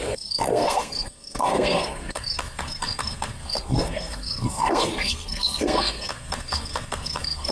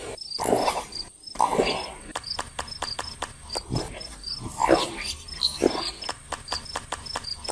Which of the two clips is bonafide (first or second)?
second